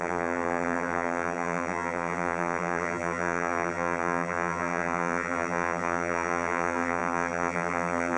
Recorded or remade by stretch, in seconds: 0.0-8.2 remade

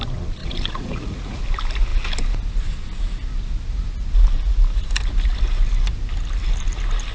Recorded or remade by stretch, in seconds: 0.0-0.4 recorded; 0.4-1.4 remade; 1.4-7.1 recorded

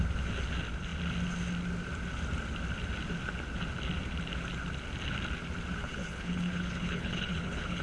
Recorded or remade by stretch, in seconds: 0.0-5.8 recorded; 5.8-7.8 remade

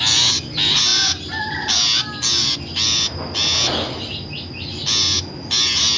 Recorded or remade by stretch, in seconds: 0.0-6.0 recorded